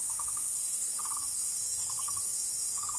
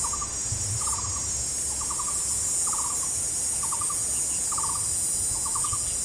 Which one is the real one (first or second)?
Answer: second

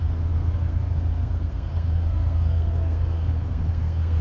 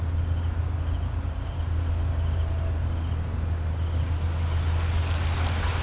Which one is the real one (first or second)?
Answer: second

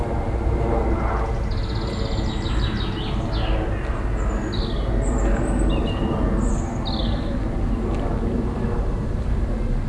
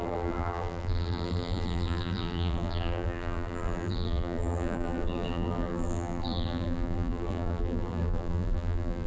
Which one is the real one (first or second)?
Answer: first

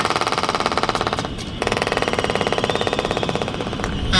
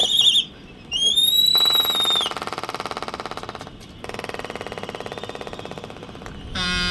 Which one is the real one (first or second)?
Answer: second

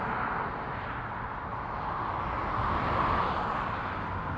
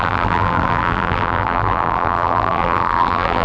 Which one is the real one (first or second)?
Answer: first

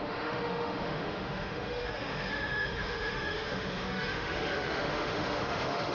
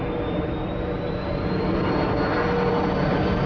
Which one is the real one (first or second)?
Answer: second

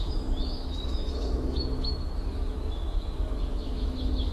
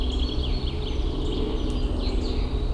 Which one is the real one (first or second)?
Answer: second